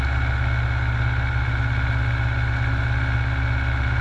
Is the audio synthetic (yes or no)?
no